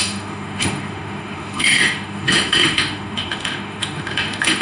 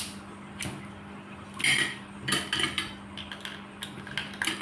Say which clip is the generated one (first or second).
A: first